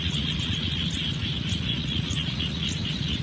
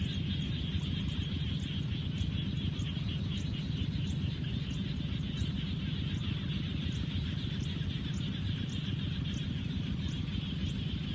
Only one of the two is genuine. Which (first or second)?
second